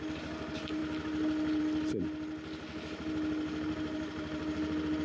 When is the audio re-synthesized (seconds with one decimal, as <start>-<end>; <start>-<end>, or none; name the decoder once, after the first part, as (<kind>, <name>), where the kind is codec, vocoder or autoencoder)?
none